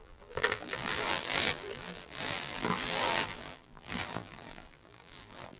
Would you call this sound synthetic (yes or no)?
yes